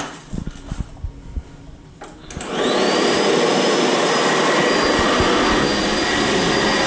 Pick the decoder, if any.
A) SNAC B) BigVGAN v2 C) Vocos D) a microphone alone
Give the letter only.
B